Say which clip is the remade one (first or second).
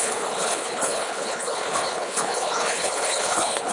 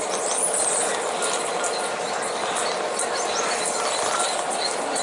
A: first